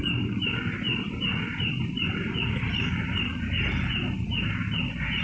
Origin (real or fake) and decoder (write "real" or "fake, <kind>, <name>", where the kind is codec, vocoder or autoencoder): real